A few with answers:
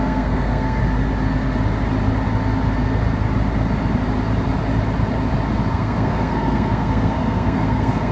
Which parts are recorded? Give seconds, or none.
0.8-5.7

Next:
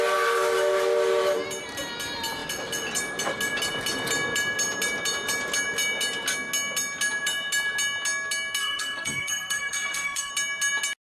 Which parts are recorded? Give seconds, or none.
0.0-8.6; 10.3-11.1

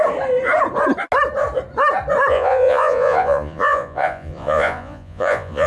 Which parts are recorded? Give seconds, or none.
0.0-2.3

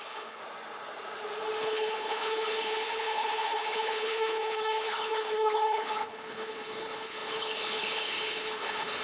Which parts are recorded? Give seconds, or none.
0.4-1.6